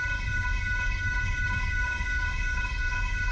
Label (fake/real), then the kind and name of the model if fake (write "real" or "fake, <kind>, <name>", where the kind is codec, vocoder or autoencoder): fake, autoencoder, DAC-VAE